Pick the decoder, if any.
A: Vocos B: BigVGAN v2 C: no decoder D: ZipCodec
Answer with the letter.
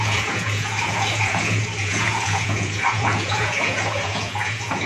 A